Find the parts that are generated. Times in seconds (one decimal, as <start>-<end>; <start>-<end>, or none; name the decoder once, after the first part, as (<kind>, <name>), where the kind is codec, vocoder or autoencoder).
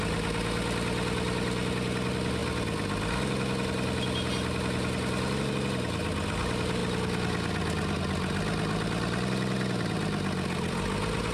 none